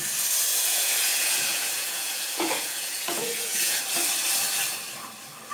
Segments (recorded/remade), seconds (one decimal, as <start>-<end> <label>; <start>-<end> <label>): 0.0-0.5 recorded; 0.5-3.8 remade; 3.8-5.5 recorded